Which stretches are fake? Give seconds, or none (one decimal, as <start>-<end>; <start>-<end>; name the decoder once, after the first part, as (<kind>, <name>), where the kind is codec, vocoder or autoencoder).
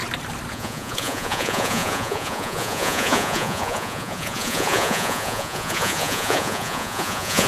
0.5-7.5 (vocoder, Vocos)